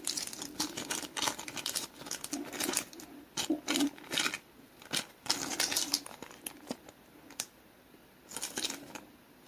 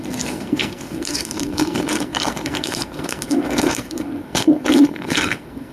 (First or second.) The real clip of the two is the first